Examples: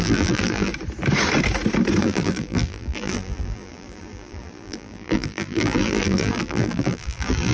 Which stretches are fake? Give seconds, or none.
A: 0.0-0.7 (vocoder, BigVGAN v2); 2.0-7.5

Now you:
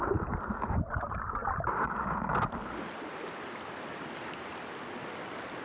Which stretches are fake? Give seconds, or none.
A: 1.4-4.8 (vocoder, BigVGAN v2)